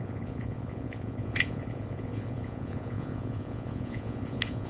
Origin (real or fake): fake